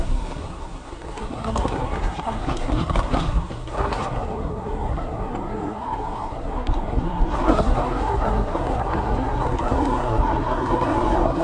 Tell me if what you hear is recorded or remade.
remade